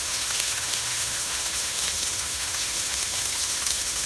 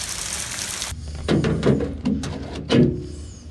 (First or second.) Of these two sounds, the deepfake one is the first